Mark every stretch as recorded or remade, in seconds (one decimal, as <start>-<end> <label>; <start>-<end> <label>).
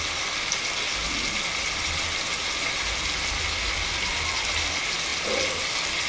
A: 0.0-6.1 recorded